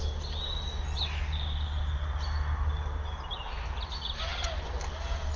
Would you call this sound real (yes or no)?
yes